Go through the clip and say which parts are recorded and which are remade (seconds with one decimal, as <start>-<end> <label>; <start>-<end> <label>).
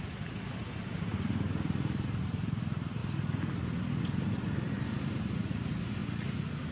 0.0-3.0 remade; 3.0-4.0 recorded; 4.0-6.0 remade; 6.0-6.7 recorded